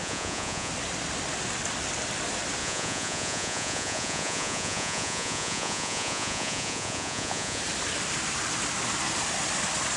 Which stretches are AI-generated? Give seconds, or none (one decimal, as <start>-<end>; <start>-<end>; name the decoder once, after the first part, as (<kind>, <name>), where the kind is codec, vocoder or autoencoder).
0.0-0.7 (vocoder, Vocos); 2.6-7.6